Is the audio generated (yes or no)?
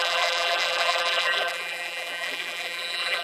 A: yes